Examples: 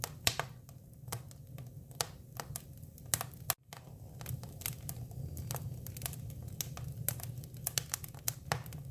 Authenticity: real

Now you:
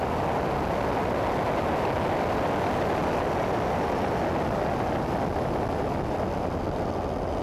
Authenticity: real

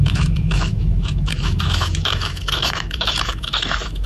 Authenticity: fake